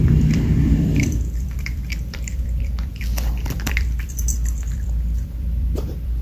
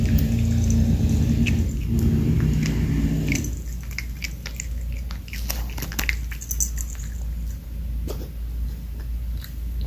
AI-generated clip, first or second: first